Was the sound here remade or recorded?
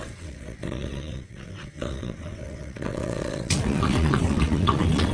remade